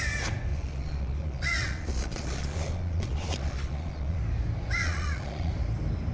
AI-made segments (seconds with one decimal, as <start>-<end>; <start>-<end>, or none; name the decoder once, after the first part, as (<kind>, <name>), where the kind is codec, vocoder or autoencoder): 0.5-4.2 (vocoder, Vocos); 4.8-5.5